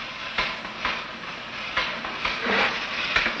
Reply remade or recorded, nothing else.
recorded